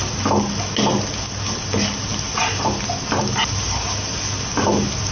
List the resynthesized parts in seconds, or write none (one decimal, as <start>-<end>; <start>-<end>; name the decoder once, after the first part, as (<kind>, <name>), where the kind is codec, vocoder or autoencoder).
none